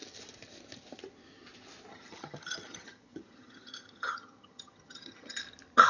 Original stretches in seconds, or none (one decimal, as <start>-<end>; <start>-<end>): 0.0-1.9; 5.4-5.9